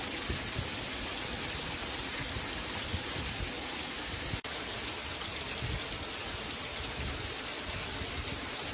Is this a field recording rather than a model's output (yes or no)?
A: yes